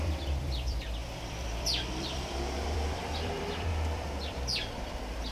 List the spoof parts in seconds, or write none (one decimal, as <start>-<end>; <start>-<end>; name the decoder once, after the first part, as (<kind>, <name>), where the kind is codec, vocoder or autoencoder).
0.0-5.3 (vocoder, BigVGAN v2)